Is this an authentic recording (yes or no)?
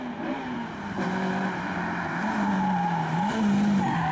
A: no